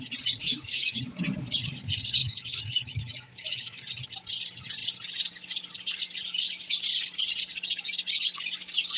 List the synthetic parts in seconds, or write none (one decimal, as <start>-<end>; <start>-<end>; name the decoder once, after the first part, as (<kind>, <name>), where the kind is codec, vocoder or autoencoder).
0.4-1.0 (autoencoder, DAC-VAE); 2.2-3.8